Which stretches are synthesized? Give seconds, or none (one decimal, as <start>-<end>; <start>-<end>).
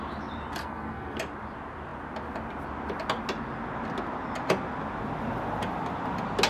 0.6-1.2